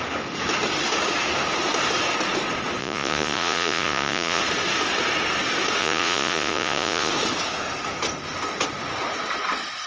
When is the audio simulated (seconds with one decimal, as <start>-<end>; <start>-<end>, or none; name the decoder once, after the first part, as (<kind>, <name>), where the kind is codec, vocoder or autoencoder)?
2.8-4.4 (vocoder, Vocos); 5.8-7.1